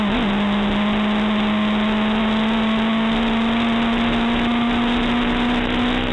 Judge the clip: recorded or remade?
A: recorded